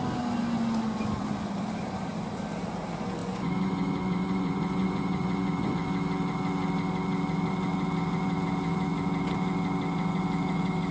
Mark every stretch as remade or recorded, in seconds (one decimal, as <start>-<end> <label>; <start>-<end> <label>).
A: 0.0-3.2 recorded; 3.2-5.7 remade; 5.7-10.9 recorded